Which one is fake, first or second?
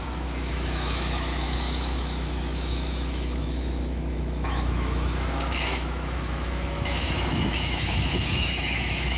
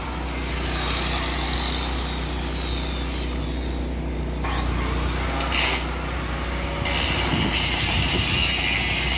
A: first